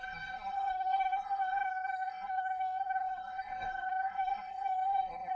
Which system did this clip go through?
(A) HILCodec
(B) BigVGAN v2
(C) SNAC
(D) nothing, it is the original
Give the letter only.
C